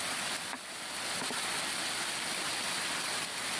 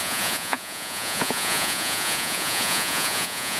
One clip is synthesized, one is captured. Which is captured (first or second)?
first